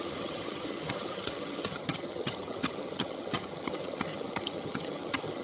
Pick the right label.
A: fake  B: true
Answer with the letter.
A